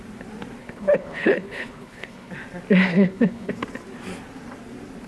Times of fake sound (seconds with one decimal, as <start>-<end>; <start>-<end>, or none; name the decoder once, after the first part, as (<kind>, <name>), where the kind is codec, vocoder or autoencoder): 0.6-2.3 (codec, HILCodec); 2.9-3.5